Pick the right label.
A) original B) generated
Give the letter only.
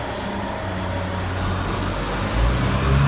A